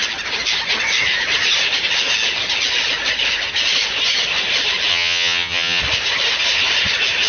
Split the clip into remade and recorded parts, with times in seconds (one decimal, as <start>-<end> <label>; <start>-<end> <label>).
0.0-4.9 recorded; 4.9-5.8 remade; 5.8-7.3 recorded